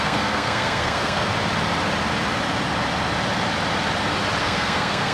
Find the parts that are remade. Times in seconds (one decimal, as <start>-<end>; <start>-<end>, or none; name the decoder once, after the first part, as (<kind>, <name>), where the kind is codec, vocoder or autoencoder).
0.0-1.3 (codec, SNAC); 4.4-5.1